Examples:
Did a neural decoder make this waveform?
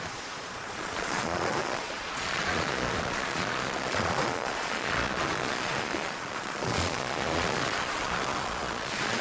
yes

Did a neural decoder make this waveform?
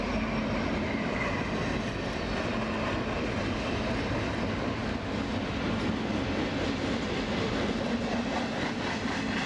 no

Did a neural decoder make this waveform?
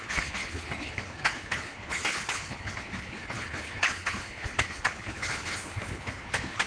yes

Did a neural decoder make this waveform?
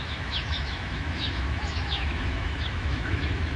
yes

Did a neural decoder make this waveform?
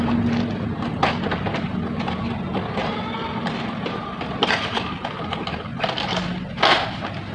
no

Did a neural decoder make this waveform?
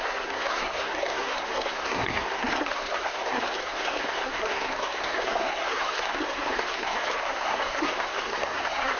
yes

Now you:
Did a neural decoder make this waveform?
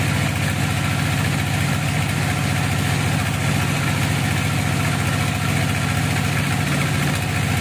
no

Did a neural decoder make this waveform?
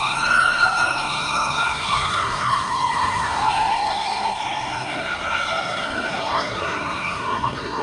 yes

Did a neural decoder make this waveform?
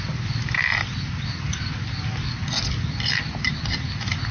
no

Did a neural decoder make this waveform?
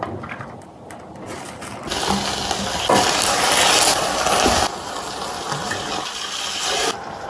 no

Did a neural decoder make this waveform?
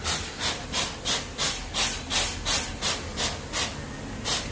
no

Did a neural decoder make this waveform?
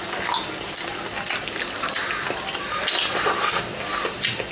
no